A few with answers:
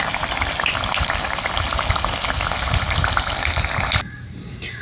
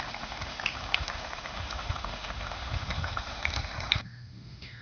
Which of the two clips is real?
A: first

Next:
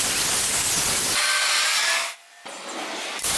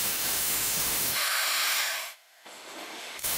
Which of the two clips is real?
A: first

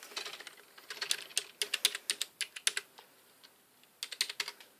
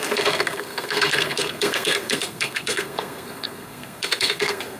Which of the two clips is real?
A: first